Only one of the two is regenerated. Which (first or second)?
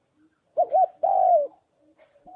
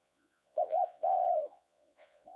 second